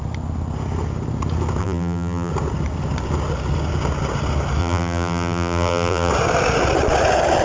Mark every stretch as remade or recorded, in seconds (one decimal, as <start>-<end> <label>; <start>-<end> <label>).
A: 0.0-1.6 recorded; 1.6-2.3 remade; 2.3-4.6 recorded; 4.6-6.1 remade; 6.1-7.4 recorded